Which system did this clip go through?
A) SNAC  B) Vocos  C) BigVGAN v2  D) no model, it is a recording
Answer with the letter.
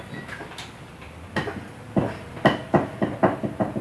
D